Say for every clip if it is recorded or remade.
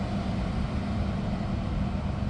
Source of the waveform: recorded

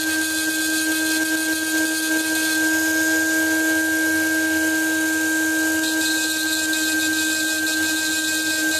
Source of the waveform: recorded